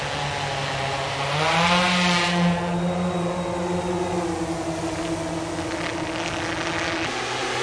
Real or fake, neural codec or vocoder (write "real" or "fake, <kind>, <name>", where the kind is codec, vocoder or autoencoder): real